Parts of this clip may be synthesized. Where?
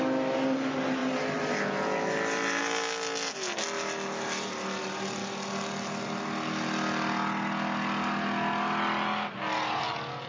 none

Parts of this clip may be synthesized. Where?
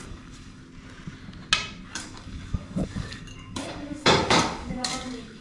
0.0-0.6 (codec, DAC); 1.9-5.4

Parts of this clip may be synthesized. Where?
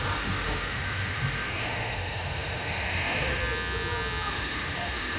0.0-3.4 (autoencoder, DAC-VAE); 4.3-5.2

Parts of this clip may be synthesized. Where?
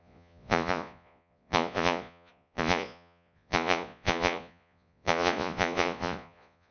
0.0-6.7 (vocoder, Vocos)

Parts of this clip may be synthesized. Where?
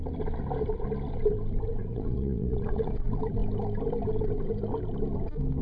1.7-2.9 (vocoder, Vocos)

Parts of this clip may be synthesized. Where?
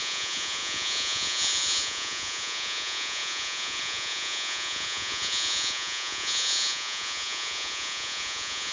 0.0-8.7 (vocoder, Vocos)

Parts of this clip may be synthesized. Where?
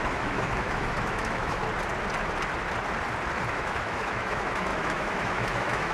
0.0-1.6 (autoencoder, DAC-VAE); 3.5-5.9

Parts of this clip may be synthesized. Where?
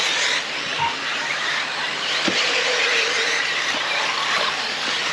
none